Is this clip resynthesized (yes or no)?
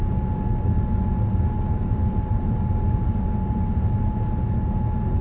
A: no